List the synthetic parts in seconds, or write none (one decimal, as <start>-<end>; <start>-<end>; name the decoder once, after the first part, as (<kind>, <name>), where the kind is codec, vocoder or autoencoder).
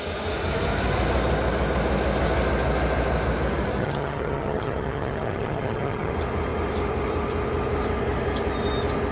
3.8-6.1 (vocoder, HiFi-GAN)